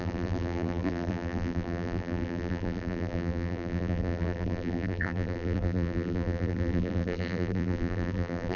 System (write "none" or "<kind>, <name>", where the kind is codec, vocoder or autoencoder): vocoder, BigVGAN v2